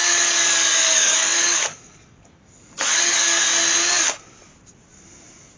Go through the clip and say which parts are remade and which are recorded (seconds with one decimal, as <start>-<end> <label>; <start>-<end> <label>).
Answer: 0.0-3.4 remade; 3.4-5.6 recorded